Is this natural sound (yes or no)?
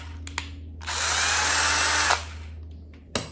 yes